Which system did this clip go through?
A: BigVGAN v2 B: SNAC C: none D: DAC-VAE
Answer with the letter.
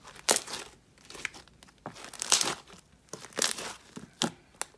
C